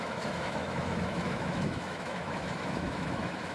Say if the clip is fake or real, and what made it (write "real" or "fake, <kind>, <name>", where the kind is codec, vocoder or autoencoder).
fake, autoencoder, DAC-VAE